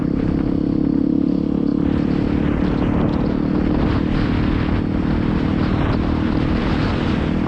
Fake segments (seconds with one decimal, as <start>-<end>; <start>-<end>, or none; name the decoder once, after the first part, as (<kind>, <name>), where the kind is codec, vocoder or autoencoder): none